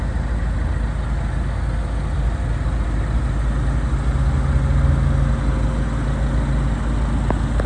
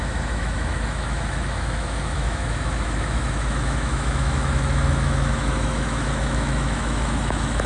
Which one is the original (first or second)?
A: first